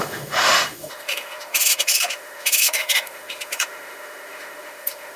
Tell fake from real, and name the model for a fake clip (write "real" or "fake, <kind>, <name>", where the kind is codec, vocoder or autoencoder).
fake, autoencoder, DAC-VAE